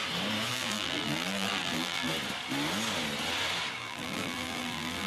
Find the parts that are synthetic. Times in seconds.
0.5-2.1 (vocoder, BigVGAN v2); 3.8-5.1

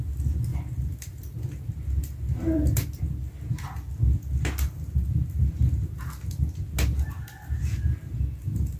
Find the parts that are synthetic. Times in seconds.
none

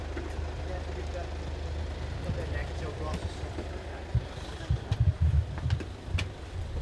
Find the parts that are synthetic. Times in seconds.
2.6-6.8 (vocoder, BigVGAN v2)